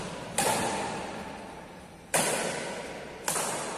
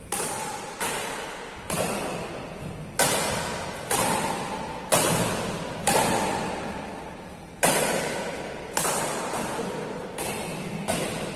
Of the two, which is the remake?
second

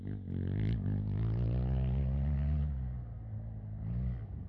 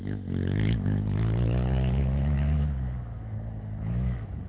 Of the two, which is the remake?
second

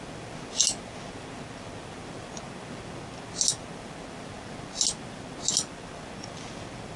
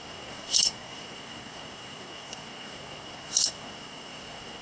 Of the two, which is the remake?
second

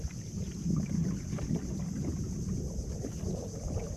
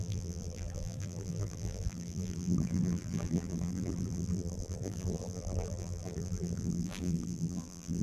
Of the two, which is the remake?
second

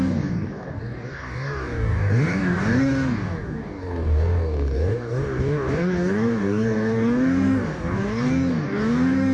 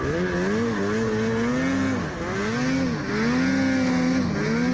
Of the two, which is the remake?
first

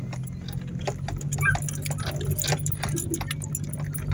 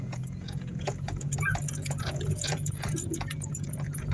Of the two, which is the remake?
second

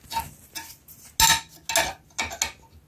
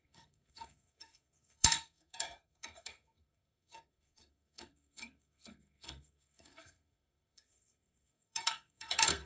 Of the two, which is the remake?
second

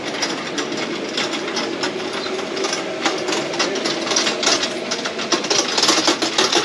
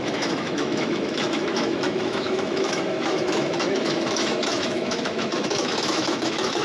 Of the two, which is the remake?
second